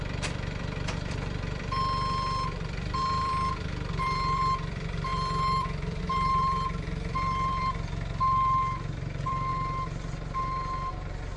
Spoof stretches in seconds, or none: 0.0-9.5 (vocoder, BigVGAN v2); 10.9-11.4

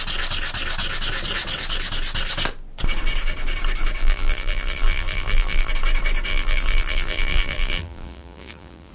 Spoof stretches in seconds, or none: 4.0-5.7 (vocoder, BigVGAN v2); 6.3-8.9

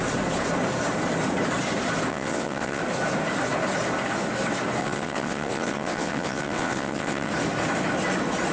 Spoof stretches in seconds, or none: 2.1-2.8 (vocoder, WaveNeXt); 4.8-7.3